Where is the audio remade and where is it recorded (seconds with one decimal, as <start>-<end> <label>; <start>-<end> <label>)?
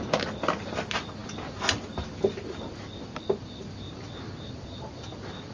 0.0-5.5 recorded